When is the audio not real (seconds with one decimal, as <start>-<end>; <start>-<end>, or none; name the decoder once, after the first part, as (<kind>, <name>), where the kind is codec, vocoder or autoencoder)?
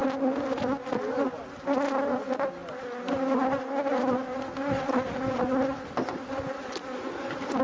none